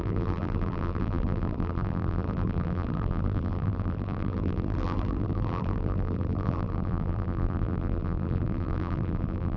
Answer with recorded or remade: remade